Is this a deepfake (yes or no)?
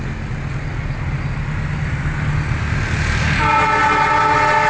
no